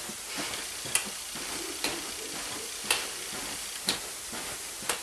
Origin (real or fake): real